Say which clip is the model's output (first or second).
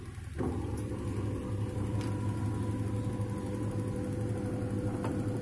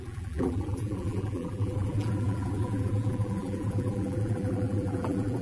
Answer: second